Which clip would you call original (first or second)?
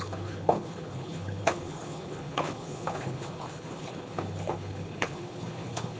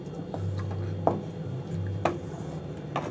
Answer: second